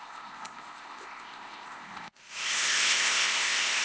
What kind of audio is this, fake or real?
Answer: fake